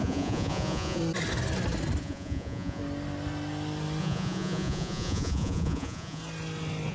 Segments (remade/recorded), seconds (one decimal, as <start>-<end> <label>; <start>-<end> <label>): 0.0-1.0 remade; 1.0-2.0 recorded; 2.0-2.8 remade; 2.8-4.0 recorded; 4.0-6.2 remade; 6.2-6.9 recorded